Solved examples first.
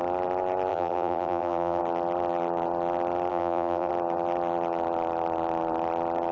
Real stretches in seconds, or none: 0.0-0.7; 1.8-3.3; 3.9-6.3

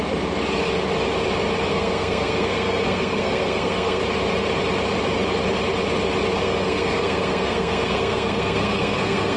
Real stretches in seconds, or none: 0.0-1.7; 4.0-6.4